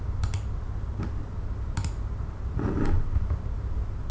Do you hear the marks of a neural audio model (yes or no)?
no